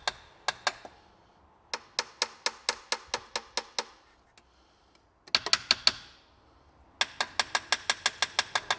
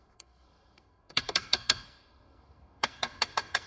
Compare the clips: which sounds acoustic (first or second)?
first